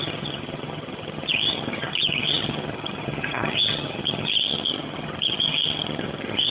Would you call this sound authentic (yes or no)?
no